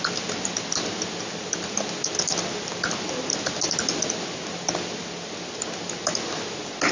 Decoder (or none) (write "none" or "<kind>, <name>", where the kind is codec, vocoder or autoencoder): none